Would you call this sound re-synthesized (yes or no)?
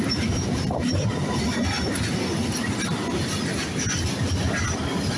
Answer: yes